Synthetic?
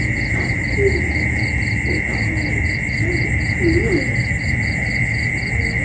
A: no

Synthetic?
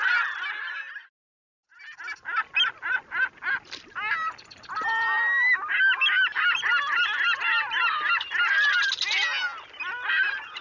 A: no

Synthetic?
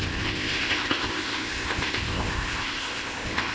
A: yes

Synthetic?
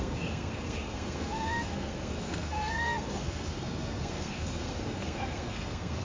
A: yes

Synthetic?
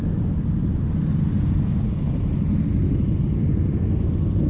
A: no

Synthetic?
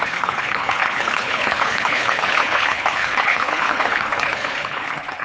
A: yes